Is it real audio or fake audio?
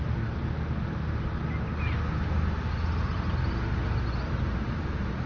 real